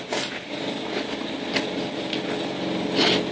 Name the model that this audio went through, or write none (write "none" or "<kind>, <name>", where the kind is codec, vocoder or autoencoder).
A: none